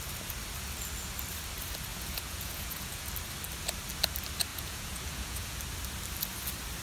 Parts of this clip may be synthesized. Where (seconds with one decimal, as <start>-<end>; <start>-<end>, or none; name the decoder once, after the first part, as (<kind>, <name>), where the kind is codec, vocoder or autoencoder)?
1.9-3.1 (vocoder, Vocos); 4.5-5.6